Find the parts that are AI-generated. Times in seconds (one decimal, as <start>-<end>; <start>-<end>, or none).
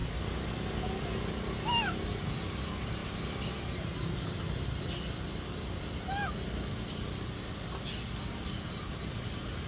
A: none